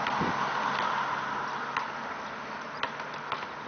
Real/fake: real